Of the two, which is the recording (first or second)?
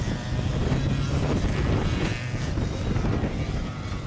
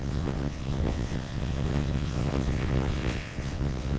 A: first